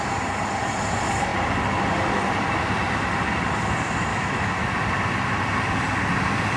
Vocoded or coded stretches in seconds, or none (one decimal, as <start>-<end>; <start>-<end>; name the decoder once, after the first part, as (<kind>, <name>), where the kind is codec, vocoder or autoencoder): 4.1-4.7 (autoencoder, DAC-VAE)